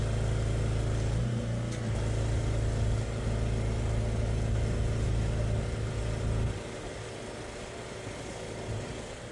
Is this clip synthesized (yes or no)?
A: no